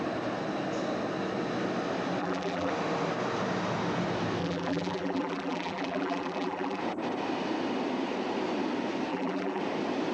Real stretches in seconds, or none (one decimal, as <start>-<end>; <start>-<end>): 0.0-2.2; 2.7-4.4; 6.8-9.1; 9.6-10.1